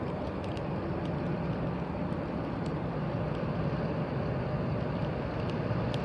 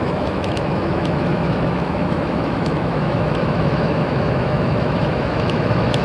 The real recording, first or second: first